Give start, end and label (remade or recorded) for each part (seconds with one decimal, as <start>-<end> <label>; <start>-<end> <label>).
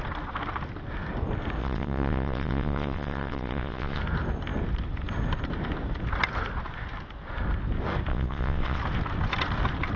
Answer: 0.0-1.6 recorded; 1.6-4.0 remade; 4.0-8.1 recorded; 8.1-8.8 remade; 8.8-10.0 recorded